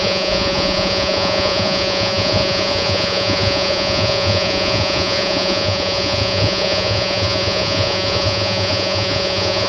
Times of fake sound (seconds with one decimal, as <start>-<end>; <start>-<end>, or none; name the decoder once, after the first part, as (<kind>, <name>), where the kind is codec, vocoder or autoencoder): 0.0-9.7 (vocoder, Vocos)